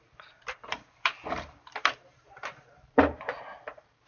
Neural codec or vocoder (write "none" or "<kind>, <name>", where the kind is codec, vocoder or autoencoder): vocoder, BigVGAN v2